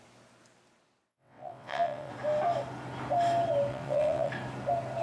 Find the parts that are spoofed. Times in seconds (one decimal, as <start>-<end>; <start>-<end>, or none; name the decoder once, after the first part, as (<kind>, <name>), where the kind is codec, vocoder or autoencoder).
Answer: 1.1-2.1 (vocoder, WaveNeXt); 3.7-4.3